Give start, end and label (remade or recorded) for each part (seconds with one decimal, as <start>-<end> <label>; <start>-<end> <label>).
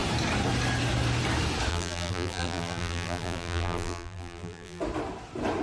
0.0-1.7 recorded; 1.7-4.8 remade; 4.8-5.6 recorded